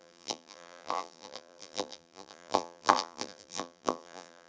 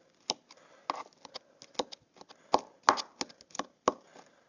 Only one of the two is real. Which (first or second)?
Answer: second